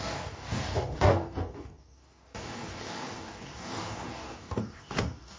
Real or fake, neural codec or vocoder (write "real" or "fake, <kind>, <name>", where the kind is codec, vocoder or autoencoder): fake, codec, DAC